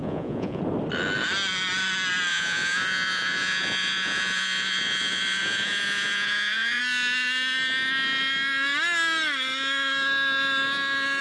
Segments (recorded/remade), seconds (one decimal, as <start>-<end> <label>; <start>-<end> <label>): 0.0-0.6 remade; 0.6-2.3 recorded; 2.3-6.8 remade; 6.8-11.2 recorded